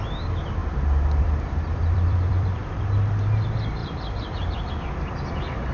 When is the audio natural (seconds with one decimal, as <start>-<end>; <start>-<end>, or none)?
0.6-1.2